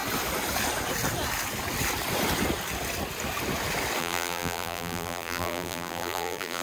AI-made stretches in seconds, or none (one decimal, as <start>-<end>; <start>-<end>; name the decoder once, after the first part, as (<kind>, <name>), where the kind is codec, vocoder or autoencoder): 4.0-6.6 (vocoder, BigVGAN v2)